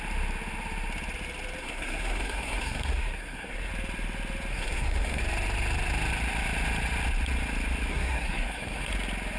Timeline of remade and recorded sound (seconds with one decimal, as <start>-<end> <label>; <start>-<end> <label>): 0.0-1.6 recorded; 1.6-3.7 remade; 3.7-4.5 recorded; 4.5-5.2 remade; 5.2-7.9 recorded; 7.9-8.9 remade; 8.9-9.4 recorded